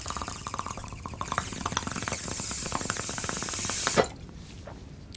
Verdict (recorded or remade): recorded